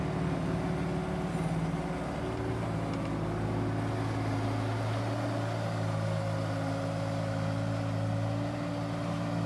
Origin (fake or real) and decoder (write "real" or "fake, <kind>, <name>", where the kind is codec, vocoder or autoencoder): real